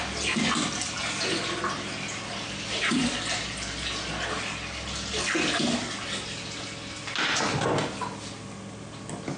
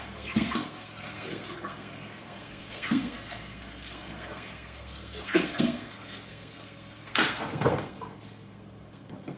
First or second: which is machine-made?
second